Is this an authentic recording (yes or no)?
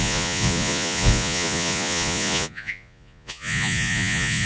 no